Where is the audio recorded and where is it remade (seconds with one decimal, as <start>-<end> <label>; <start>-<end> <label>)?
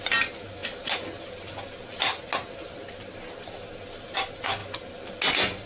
0.0-5.7 recorded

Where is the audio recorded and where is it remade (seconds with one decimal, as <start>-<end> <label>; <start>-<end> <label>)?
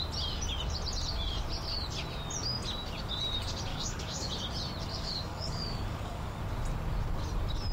0.0-3.7 recorded; 3.7-4.3 remade; 4.3-4.9 recorded; 4.9-6.4 remade; 6.4-7.7 recorded